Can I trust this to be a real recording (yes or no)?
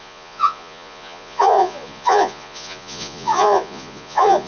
no